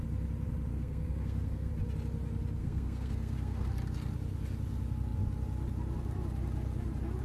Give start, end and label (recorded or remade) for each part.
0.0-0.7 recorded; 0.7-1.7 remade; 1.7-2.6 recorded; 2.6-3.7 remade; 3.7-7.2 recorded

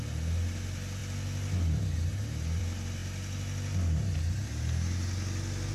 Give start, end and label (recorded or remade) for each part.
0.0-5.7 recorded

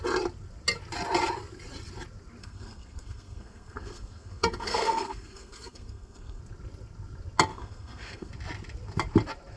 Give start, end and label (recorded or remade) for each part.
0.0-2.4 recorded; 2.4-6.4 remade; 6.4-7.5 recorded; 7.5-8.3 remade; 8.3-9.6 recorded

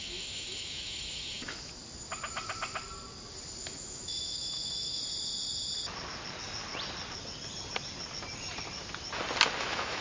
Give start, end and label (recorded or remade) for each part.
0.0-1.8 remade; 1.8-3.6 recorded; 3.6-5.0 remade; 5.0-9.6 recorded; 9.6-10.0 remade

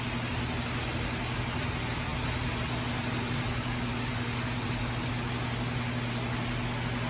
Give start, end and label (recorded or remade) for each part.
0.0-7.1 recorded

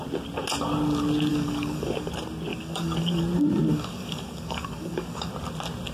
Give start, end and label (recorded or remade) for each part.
0.0-1.3 recorded; 1.3-2.1 remade; 2.1-2.5 recorded; 2.5-3.2 remade; 3.2-3.7 recorded; 3.7-5.3 remade; 5.3-5.9 recorded

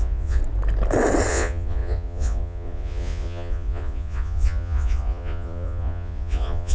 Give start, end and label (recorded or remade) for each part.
0.0-0.4 remade; 0.4-1.3 recorded; 1.3-6.7 remade